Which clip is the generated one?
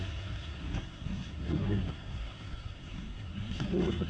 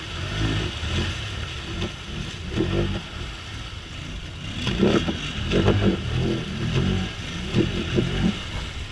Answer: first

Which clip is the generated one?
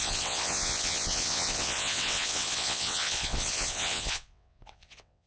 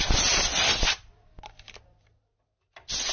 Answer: first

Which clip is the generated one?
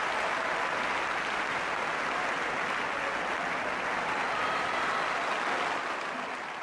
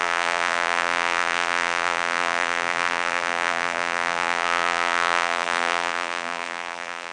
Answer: second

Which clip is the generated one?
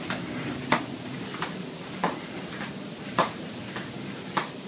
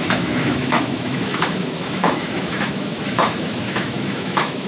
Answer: second